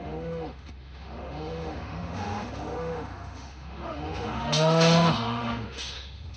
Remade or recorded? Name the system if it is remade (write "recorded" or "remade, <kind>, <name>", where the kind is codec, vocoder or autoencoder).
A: remade, autoencoder, DAC-VAE